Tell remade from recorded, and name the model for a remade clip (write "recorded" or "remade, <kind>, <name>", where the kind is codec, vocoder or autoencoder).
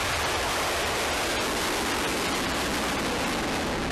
recorded